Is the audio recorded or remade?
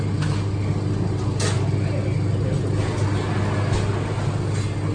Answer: recorded